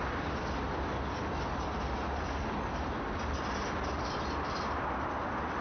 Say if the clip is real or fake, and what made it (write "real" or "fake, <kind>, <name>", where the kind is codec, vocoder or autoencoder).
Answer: real